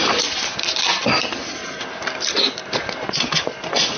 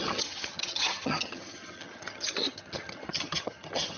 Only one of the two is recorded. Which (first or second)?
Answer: first